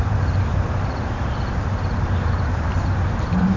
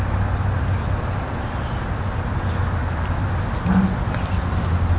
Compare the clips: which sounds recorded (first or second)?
second